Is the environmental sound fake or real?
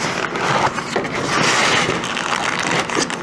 real